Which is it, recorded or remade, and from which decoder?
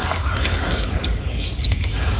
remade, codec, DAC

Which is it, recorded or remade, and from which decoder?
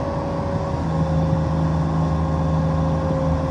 recorded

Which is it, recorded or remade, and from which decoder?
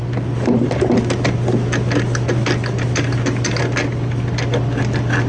recorded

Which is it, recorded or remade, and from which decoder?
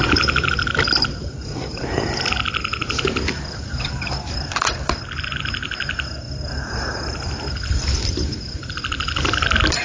remade, vocoder, BigVGAN v2